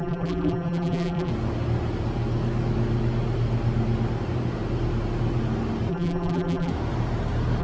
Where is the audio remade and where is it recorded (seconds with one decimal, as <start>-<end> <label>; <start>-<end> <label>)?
0.0-1.3 remade; 1.3-5.9 recorded; 5.9-6.7 remade; 6.7-7.6 recorded